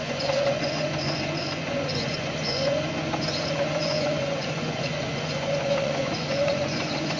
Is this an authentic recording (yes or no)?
no